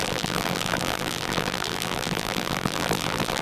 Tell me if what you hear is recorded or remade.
remade